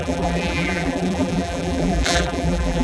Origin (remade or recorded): remade